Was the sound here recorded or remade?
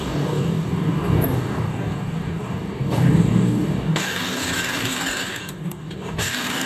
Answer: remade